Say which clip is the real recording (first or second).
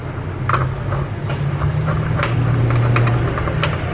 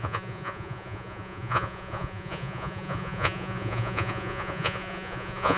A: first